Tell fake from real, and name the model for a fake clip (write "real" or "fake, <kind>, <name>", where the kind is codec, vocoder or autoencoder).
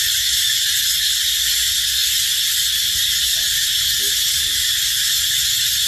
real